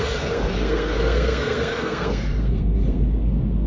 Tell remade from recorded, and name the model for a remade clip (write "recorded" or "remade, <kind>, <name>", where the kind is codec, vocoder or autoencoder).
remade, codec, SNAC